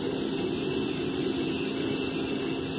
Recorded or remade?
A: recorded